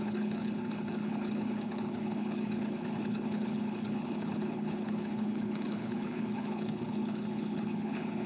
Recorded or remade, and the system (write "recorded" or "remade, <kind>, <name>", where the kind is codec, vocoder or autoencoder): remade, codec, HILCodec